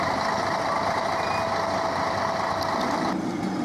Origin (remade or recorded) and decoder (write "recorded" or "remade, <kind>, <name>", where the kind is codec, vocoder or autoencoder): recorded